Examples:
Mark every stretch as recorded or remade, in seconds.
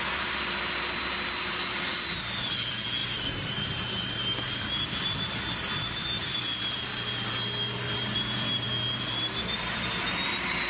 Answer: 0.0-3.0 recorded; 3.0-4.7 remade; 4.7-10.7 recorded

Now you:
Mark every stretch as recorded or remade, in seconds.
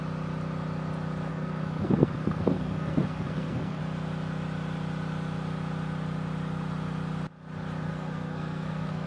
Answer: 0.0-1.3 recorded; 1.3-3.8 remade; 3.8-7.9 recorded; 7.9-9.1 remade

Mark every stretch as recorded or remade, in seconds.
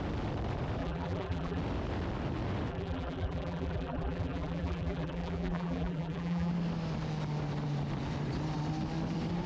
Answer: 0.0-0.8 recorded; 0.8-1.6 remade; 1.6-2.7 recorded; 2.7-6.5 remade; 6.5-9.5 recorded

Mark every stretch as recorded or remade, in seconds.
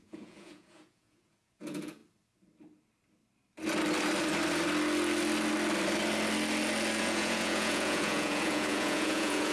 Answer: 0.0-2.0 remade; 2.0-7.0 recorded; 7.0-9.5 remade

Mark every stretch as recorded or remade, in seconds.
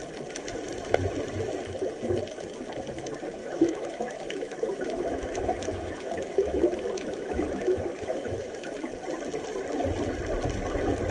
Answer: 0.0-3.4 recorded; 3.4-8.7 remade; 8.7-11.1 recorded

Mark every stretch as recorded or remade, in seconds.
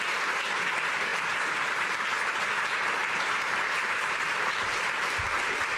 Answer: 0.0-3.0 recorded; 3.0-5.8 remade